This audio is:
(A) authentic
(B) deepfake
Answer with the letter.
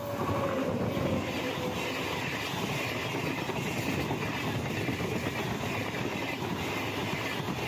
A